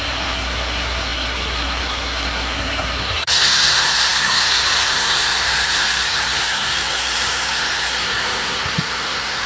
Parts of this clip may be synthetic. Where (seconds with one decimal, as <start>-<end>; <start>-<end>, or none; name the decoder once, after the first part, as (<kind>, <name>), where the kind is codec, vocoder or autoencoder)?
0.0-9.5 (codec, SNAC)